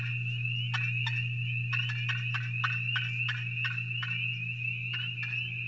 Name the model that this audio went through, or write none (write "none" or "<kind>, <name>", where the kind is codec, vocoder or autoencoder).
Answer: none